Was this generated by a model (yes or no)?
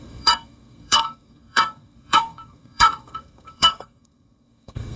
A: yes